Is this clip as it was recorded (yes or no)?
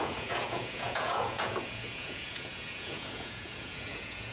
no